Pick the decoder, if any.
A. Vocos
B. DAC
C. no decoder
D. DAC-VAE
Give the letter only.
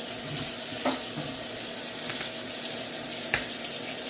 C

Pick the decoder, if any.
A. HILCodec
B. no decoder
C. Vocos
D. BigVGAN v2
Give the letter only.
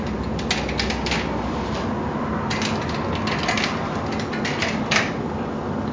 B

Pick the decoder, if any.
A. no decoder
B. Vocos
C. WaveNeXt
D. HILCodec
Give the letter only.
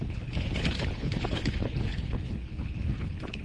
D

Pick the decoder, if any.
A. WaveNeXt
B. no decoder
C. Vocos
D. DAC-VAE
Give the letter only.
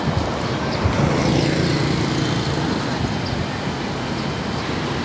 B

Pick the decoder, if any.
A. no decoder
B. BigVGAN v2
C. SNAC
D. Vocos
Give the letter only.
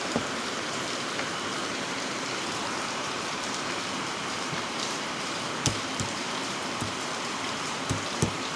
B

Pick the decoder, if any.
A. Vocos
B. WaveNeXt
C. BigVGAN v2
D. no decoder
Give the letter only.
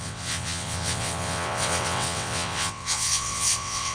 B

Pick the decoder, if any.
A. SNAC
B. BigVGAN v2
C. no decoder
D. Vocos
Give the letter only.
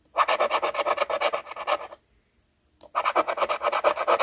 C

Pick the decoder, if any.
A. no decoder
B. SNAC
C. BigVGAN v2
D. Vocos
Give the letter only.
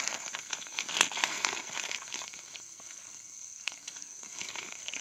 B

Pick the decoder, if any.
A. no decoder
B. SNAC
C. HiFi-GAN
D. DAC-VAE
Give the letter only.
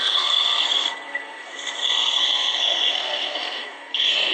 B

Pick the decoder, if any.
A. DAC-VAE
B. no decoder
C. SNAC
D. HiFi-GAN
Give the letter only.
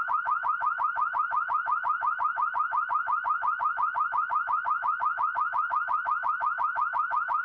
B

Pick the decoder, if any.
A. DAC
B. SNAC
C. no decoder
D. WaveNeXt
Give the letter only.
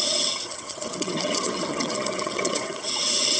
D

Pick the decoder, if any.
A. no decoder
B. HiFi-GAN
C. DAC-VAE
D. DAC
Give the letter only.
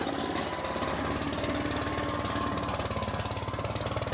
A